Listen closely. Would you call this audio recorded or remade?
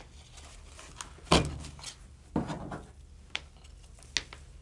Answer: recorded